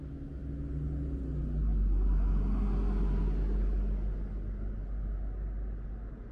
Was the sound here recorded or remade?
recorded